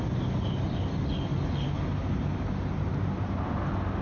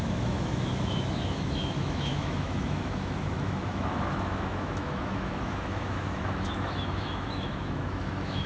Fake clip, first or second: second